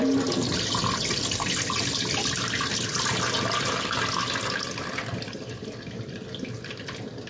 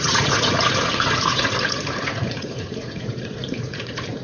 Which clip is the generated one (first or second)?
second